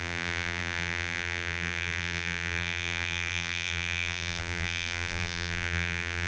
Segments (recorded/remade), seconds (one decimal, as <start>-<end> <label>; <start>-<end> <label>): 0.0-6.3 remade